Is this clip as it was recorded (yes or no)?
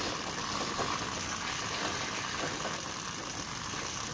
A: yes